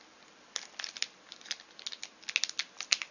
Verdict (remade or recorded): recorded